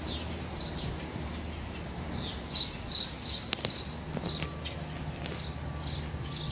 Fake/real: real